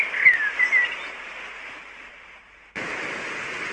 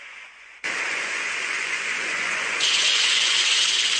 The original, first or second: first